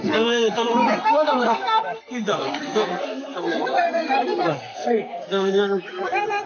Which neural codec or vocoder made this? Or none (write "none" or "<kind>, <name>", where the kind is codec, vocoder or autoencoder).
codec, SNAC